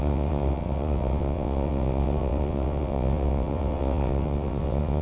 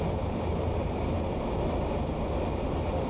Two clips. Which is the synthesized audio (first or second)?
first